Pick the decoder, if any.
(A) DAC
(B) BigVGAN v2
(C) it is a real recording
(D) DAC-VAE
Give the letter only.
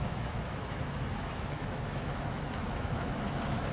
D